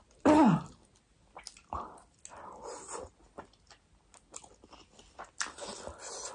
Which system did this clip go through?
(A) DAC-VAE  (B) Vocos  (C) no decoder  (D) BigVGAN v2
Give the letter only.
C